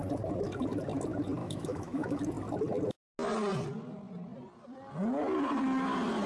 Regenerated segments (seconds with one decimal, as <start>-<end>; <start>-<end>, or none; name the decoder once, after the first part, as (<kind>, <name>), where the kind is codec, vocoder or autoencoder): 1.4-2.2 (autoencoder, DAC-VAE)